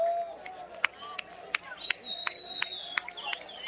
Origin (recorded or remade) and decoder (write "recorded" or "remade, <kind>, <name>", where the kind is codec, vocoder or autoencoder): recorded